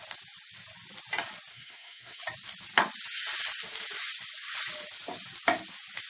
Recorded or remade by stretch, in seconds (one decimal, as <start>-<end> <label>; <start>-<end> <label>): 0.0-1.5 recorded; 1.5-2.2 remade; 2.2-6.1 recorded